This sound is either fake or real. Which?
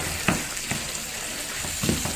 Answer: real